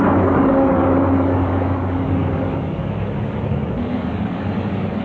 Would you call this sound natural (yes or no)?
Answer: no